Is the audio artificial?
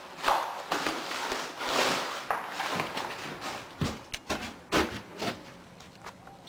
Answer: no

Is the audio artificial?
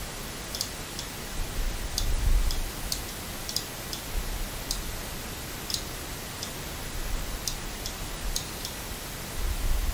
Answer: no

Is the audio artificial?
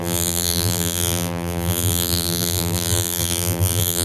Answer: yes